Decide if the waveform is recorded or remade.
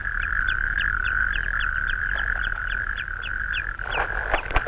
recorded